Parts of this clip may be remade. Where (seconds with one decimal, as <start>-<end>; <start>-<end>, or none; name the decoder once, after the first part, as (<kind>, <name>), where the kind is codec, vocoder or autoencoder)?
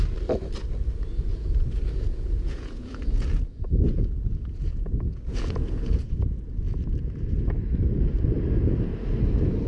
1.3-6.4 (vocoder, Vocos)